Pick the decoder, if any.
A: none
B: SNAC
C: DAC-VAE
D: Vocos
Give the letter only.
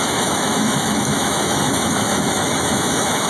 C